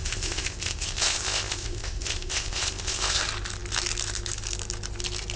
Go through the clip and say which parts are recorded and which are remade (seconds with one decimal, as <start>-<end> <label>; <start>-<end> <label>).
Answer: 0.0-3.2 remade; 3.2-5.4 recorded